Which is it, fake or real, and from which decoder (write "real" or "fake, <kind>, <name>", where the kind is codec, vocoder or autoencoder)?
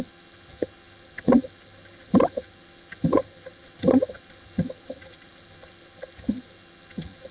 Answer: fake, vocoder, HiFi-GAN